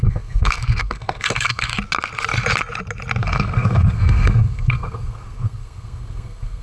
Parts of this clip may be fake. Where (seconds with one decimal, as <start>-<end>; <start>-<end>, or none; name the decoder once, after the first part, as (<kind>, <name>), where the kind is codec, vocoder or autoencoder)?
0.0-1.7 (codec, SNAC); 3.2-6.6